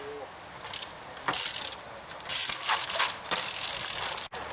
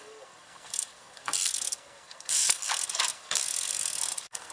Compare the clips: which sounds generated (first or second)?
second